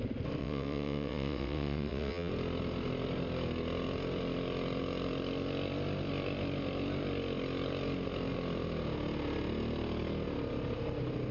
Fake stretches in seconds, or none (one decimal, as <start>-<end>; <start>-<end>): 0.4-2.3